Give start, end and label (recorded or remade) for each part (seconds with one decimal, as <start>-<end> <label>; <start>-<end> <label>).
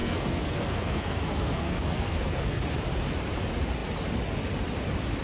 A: 0.0-2.6 remade; 2.6-5.2 recorded